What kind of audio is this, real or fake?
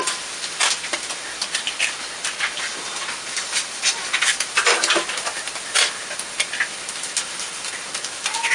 real